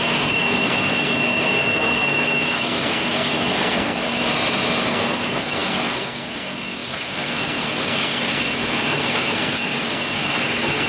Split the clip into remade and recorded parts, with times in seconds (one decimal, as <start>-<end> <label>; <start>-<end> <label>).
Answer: 0.0-4.2 remade; 4.2-4.8 recorded; 4.8-10.9 remade